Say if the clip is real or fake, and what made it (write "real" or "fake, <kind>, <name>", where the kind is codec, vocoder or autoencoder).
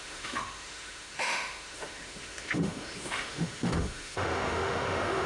fake, autoencoder, DAC-VAE